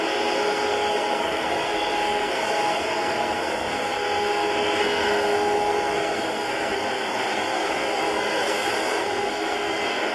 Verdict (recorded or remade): remade